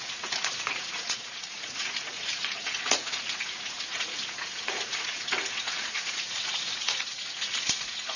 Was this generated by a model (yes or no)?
yes